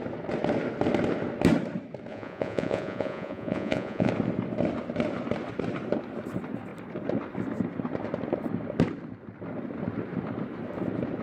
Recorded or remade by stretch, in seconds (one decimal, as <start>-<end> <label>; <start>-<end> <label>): 0.0-2.1 recorded; 2.1-4.1 remade; 4.1-11.2 recorded